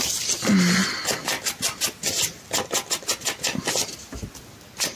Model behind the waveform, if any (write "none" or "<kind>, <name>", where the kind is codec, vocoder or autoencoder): none